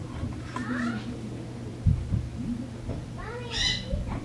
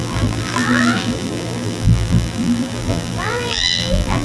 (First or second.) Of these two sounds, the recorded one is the first